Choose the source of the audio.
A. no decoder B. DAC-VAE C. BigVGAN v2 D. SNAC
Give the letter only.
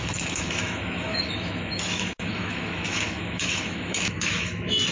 B